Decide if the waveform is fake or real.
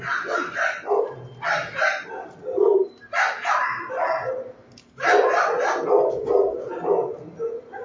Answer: real